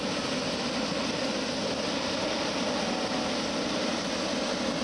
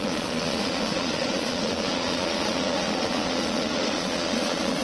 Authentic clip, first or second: first